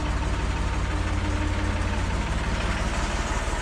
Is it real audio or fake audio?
real